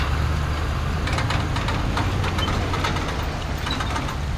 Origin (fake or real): real